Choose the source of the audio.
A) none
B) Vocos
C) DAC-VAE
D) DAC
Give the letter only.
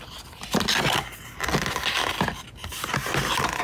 A